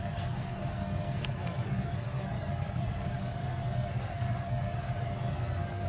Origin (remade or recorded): remade